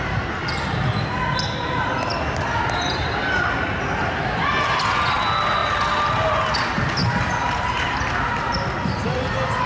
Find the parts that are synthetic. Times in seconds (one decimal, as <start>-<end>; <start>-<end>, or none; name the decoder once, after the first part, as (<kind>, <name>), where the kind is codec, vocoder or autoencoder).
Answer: none